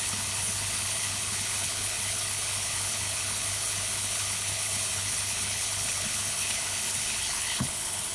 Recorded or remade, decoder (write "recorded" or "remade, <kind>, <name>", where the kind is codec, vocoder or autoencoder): remade, codec, HILCodec